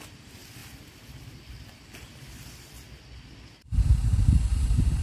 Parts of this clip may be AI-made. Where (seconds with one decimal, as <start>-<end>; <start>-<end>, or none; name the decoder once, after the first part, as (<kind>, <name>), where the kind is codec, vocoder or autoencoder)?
4.5-5.0 (vocoder, BigVGAN v2)